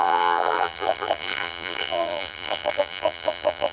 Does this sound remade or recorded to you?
remade